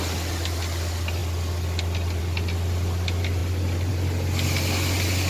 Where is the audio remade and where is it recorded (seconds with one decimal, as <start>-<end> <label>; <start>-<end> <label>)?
0.0-5.3 recorded